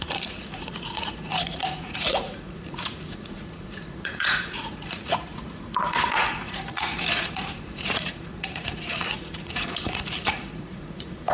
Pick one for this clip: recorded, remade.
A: remade